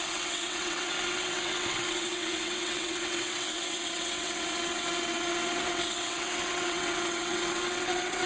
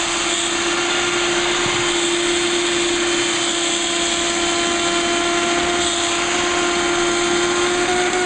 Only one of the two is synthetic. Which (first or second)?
first